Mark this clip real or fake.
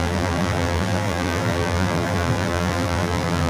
fake